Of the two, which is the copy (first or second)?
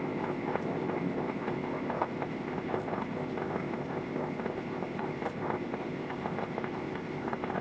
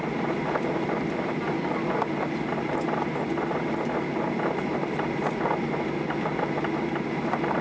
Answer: first